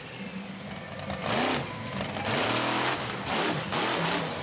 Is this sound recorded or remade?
recorded